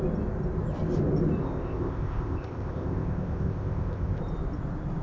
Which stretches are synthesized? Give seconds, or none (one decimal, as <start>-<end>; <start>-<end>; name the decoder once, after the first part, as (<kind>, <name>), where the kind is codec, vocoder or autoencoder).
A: 1.4-4.2 (codec, ZipCodec)